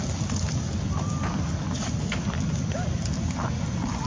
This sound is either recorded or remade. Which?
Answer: recorded